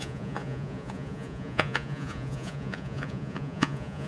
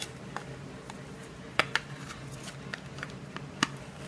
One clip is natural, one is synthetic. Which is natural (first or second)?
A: second